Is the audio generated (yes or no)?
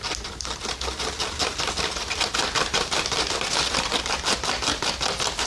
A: no